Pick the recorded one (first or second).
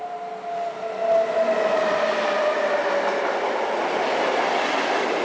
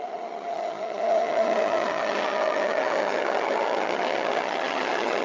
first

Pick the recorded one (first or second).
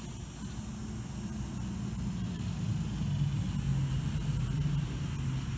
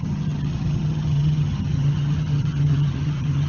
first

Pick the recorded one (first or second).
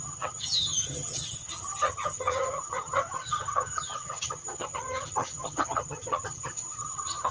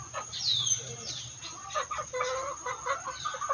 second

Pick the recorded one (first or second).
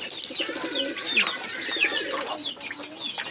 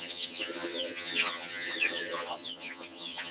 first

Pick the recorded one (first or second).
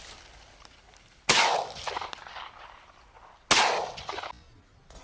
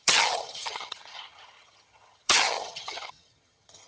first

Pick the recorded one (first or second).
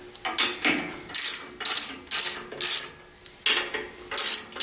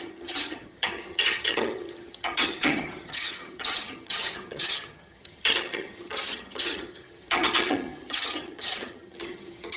first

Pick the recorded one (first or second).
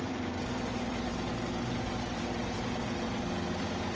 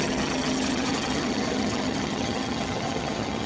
first